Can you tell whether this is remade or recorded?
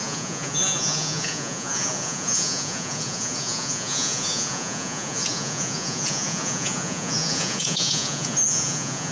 remade